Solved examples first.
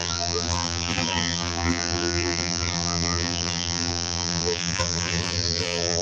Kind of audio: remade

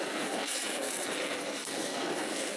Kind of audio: remade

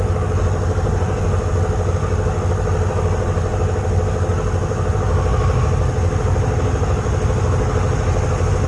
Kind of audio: recorded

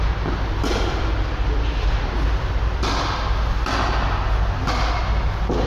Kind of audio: recorded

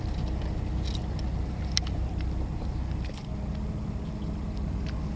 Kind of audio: recorded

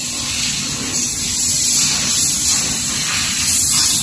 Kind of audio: recorded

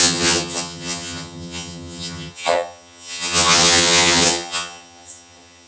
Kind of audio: remade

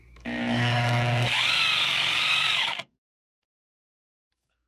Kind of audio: remade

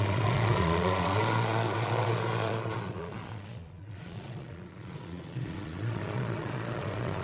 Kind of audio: remade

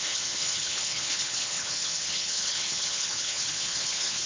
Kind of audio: remade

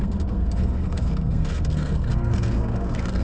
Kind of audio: remade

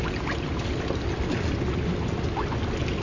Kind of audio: recorded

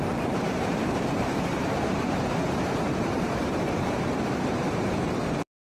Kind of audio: remade